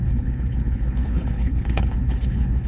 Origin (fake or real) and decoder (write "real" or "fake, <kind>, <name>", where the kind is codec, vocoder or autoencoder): fake, codec, HILCodec